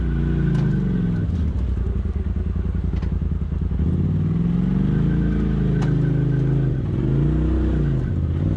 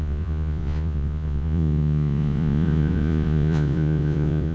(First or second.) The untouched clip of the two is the first